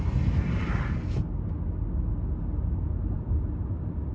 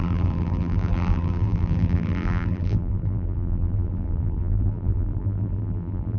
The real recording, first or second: first